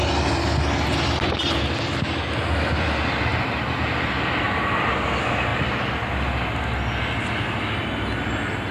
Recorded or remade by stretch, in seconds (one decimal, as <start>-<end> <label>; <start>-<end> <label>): 0.0-3.3 recorded; 3.3-4.9 remade; 4.9-5.5 recorded; 5.5-6.1 remade; 6.1-8.7 recorded